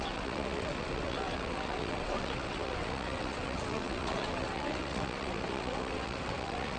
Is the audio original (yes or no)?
no